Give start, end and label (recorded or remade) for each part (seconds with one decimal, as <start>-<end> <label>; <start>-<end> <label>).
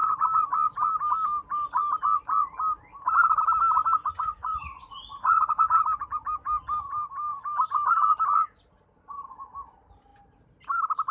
0.0-4.0 recorded; 4.0-5.8 remade; 5.8-11.1 recorded